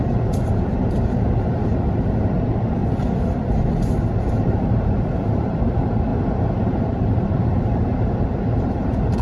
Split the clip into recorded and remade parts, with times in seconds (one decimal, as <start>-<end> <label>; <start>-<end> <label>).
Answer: 0.0-2.8 remade; 2.8-4.2 recorded; 4.2-6.1 remade; 6.1-6.8 recorded; 6.8-9.2 remade